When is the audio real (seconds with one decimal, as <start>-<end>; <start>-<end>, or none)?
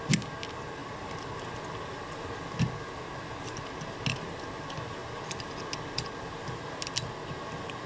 0.0-7.9